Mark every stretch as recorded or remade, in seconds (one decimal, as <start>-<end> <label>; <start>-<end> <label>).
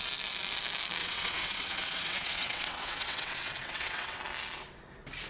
0.0-1.0 recorded; 1.0-4.2 remade; 4.2-5.3 recorded